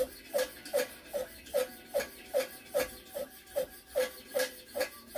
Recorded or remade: recorded